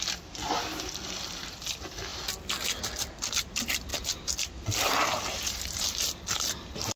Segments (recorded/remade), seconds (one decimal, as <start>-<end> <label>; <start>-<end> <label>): 0.0-2.1 remade; 2.1-2.8 recorded; 2.8-7.0 remade